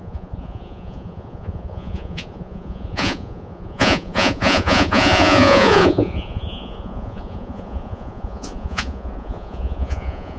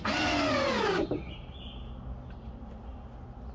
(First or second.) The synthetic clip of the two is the first